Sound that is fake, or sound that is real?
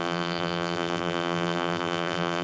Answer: fake